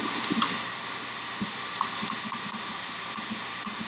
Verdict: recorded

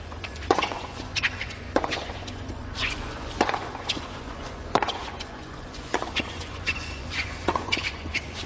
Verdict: remade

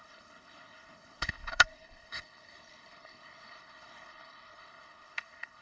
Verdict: remade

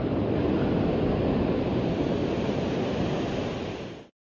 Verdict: recorded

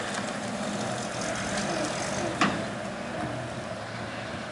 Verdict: recorded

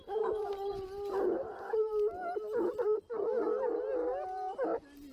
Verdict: recorded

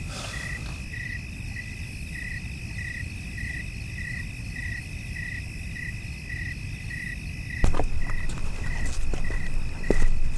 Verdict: recorded